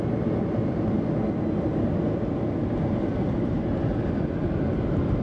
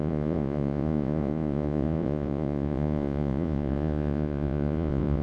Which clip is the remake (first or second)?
second